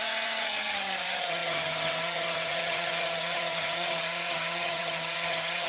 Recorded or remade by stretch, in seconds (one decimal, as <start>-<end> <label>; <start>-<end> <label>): 0.0-5.7 remade

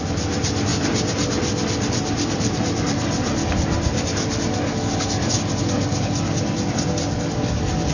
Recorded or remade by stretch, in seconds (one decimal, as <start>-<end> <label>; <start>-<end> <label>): 0.0-7.9 recorded